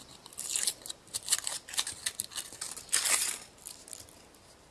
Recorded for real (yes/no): yes